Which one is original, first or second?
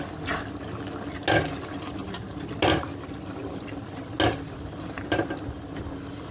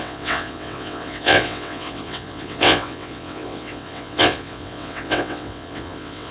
first